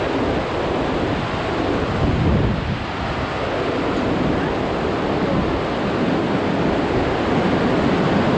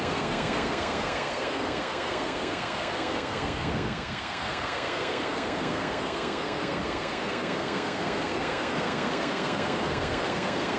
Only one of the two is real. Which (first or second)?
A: first